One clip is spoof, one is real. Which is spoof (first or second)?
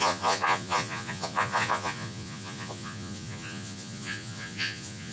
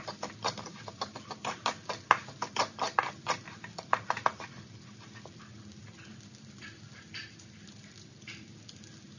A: first